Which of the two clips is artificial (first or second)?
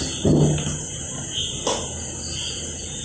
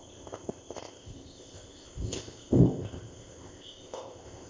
second